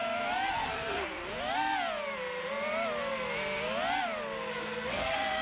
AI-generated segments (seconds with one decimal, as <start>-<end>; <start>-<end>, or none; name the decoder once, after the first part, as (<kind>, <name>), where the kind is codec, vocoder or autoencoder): 0.5-1.3 (codec, SNAC); 4.5-5.4